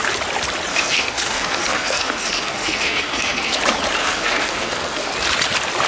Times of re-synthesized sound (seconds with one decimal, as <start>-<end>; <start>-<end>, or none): 0.7-3.6; 4.0-5.1